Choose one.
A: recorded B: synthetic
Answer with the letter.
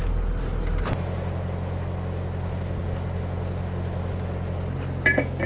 A